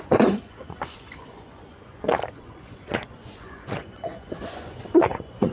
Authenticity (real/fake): fake